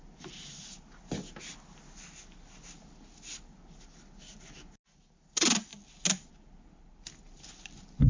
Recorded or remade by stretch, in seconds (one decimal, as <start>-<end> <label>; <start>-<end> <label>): 0.0-8.1 recorded